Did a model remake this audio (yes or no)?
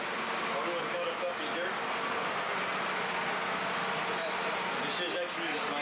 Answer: no